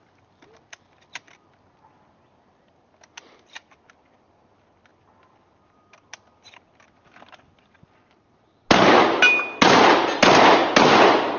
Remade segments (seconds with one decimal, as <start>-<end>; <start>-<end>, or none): none